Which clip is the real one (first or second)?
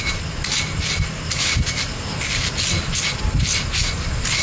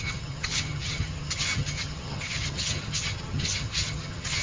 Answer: first